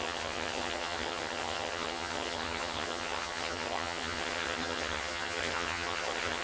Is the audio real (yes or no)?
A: no